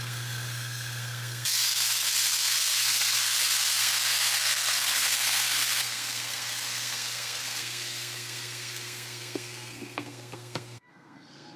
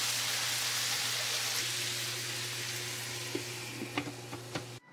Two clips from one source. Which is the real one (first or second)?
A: second